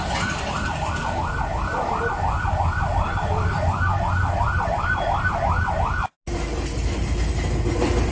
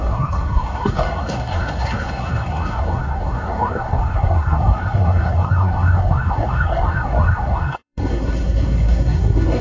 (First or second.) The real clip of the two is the first